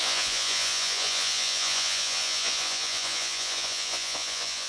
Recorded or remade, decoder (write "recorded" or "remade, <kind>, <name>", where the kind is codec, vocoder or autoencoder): remade, vocoder, Vocos